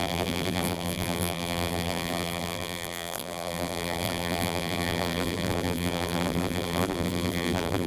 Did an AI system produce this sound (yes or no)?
yes